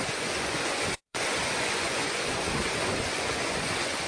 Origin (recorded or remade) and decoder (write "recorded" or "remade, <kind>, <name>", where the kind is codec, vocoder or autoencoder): remade, vocoder, Vocos